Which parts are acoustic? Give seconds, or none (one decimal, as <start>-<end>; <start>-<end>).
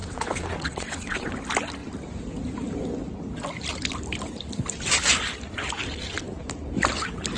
1.3-7.4